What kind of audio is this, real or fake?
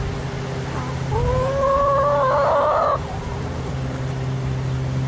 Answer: real